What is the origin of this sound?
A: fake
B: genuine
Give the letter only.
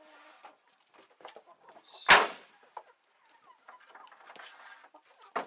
B